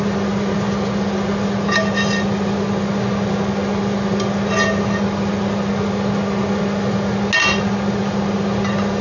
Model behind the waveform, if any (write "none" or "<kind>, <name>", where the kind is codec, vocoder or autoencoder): none